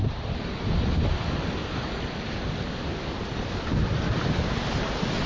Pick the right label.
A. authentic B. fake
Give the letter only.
A